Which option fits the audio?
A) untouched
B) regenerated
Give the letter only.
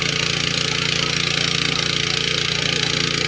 A